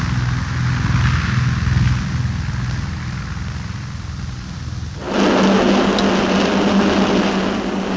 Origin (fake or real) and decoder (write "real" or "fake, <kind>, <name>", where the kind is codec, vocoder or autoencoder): real